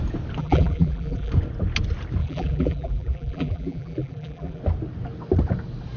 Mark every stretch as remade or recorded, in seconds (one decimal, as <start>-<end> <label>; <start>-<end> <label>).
0.0-0.4 recorded; 0.4-1.3 remade; 1.3-2.2 recorded; 2.2-4.6 remade; 4.6-6.0 recorded